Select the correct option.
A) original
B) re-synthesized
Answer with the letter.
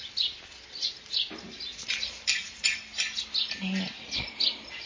A